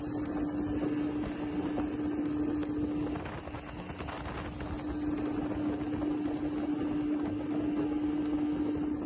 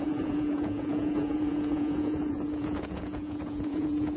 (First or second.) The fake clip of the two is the second